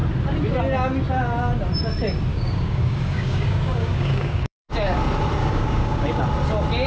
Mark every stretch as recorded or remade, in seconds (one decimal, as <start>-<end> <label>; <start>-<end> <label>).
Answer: 0.0-2.3 recorded; 2.3-4.7 remade; 4.7-5.4 recorded; 5.4-6.2 remade; 6.2-6.9 recorded